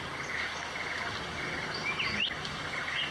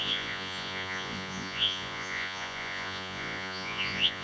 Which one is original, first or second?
first